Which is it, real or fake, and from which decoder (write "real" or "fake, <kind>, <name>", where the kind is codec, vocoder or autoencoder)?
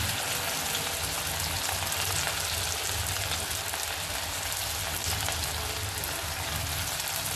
real